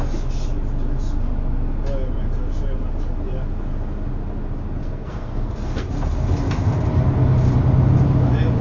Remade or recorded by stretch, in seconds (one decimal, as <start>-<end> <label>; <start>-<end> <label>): 0.0-4.8 recorded; 4.8-5.9 remade; 5.9-8.6 recorded